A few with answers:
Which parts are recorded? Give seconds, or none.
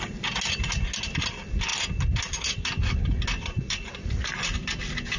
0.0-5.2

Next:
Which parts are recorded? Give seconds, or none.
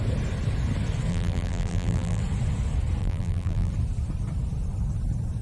0.0-1.1; 2.2-3.0; 3.7-5.4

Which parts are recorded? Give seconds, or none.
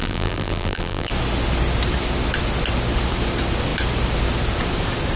1.1-5.2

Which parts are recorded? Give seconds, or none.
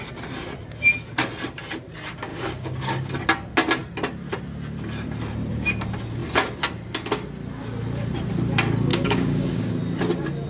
0.0-2.3; 3.1-8.9; 9.7-10.5